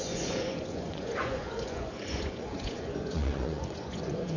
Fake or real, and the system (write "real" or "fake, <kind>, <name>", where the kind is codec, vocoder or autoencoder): fake, vocoder, Vocos